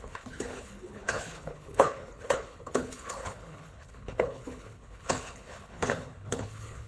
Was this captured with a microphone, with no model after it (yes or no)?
no